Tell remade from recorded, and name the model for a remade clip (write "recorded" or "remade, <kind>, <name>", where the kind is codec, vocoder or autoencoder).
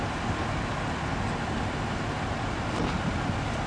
recorded